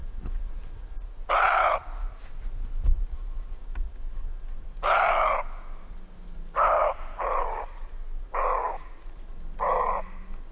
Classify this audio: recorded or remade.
recorded